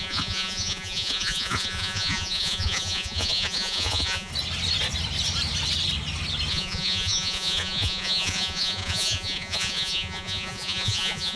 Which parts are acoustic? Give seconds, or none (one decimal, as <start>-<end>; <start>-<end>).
4.3-6.5